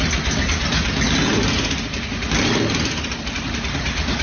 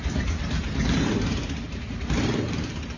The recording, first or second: first